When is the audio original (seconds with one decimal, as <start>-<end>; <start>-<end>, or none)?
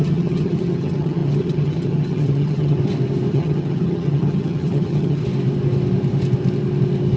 2.8-3.3; 5.2-7.2